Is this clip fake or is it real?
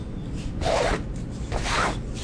real